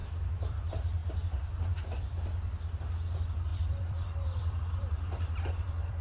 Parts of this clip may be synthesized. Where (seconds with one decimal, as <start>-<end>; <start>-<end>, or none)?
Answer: 0.0-0.6; 3.5-6.0